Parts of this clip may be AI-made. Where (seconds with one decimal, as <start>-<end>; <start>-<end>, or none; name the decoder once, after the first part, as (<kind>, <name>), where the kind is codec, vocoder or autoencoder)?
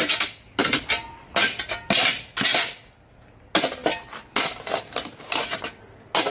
none